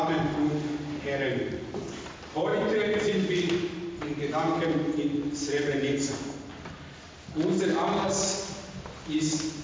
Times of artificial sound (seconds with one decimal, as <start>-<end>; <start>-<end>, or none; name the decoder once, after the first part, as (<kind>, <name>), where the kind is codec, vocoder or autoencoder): none